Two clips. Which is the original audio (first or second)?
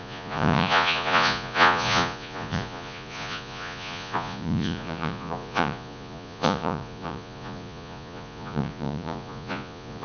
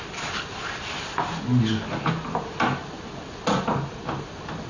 second